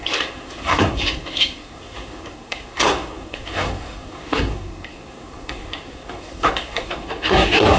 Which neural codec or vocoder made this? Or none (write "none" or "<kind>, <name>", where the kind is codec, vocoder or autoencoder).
codec, SNAC